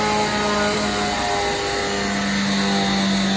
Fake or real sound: real